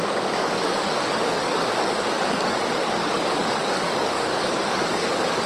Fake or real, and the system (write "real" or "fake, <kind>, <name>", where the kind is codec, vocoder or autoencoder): fake, codec, DAC